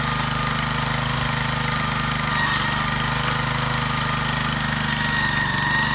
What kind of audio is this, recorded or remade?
recorded